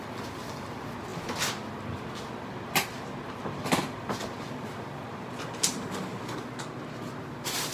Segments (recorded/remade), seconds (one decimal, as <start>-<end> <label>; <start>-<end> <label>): 0.0-7.7 recorded